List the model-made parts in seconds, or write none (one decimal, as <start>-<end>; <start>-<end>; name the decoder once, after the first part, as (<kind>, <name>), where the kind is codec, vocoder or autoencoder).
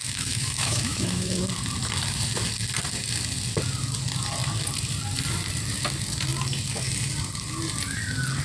0.0-1.4 (autoencoder, DAC-VAE)